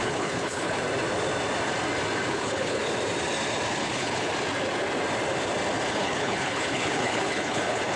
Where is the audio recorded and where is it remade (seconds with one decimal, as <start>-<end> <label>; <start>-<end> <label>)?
0.0-0.8 remade; 0.8-2.3 recorded; 2.3-2.8 remade; 2.8-3.8 recorded; 3.8-4.3 remade; 4.3-5.9 recorded; 5.9-8.0 remade